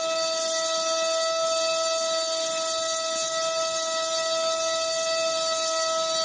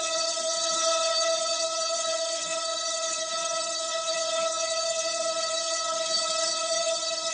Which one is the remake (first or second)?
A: second